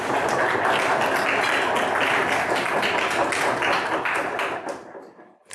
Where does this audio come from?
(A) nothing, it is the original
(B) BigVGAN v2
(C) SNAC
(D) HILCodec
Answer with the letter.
A